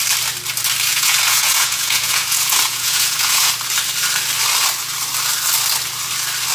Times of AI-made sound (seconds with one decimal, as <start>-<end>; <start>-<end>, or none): 0.9-3.5